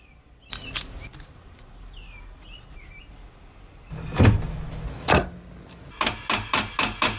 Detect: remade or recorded recorded